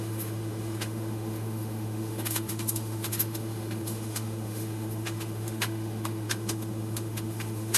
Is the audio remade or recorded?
remade